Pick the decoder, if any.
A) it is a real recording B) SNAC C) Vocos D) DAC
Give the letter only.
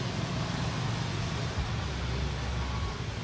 A